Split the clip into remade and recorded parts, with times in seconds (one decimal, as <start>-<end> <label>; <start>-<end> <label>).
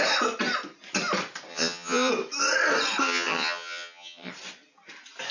0.0-1.5 recorded; 1.5-2.1 remade; 2.1-3.0 recorded; 3.0-4.3 remade; 4.3-5.3 recorded